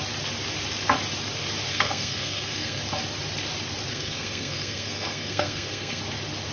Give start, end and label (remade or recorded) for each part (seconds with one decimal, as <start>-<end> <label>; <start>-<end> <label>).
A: 0.0-1.7 recorded; 1.7-2.8 remade; 2.8-3.9 recorded; 3.9-6.0 remade; 6.0-6.5 recorded